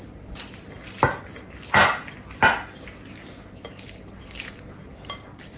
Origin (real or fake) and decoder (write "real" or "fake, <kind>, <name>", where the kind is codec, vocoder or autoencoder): real